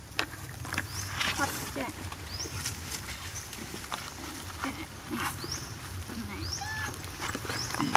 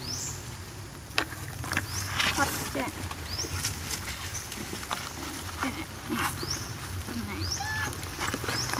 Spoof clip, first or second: first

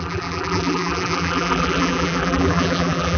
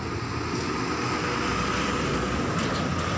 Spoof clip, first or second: first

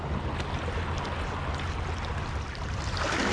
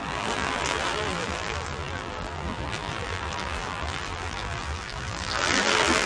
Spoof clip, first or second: second